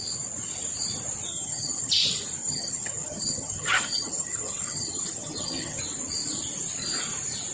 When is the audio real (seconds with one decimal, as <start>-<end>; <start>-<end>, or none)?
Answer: 0.0-1.3; 1.9-2.4; 5.8-7.5